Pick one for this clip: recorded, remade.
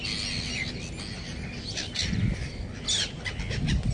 recorded